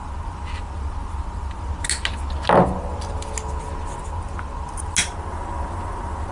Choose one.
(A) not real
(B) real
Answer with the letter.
B